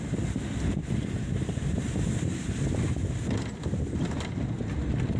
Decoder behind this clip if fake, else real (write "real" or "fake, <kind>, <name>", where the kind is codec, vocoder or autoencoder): real